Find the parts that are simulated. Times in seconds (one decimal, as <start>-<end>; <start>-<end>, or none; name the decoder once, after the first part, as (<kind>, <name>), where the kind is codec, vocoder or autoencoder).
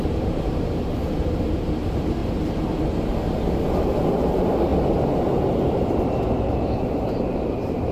0.0-2.2 (vocoder, BigVGAN v2); 4.1-4.7; 6.4-7.9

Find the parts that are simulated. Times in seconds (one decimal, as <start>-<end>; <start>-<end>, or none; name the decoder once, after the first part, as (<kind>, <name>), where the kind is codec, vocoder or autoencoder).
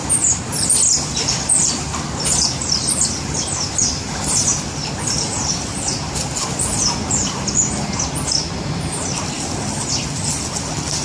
0.0-3.2 (vocoder, BigVGAN v2)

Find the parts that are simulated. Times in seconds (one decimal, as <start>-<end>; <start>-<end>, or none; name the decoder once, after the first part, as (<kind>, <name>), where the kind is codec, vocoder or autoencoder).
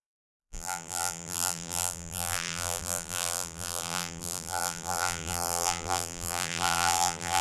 0.0-7.4 (vocoder, BigVGAN v2)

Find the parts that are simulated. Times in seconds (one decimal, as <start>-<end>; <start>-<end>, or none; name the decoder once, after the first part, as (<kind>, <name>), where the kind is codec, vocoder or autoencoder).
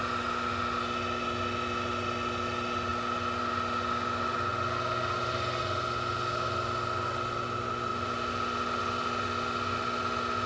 7.9-8.8 (vocoder, BigVGAN v2)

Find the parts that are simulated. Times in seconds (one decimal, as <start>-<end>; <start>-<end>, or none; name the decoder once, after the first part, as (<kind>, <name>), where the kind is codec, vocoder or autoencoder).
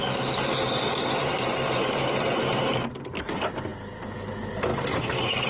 1.2-2.7 (vocoder, BigVGAN v2); 4.7-5.5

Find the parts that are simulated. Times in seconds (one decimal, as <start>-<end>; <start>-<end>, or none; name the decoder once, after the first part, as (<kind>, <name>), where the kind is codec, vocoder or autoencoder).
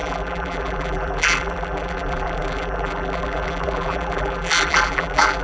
0.0-5.4 (vocoder, BigVGAN v2)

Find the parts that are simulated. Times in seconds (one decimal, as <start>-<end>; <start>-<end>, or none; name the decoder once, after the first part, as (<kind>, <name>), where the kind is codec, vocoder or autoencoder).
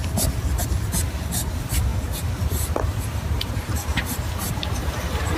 1.0-5.4 (vocoder, BigVGAN v2)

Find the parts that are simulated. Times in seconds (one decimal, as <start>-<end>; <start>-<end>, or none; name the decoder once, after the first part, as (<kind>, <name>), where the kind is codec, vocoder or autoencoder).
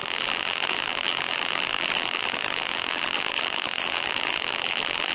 0.0-5.1 (vocoder, BigVGAN v2)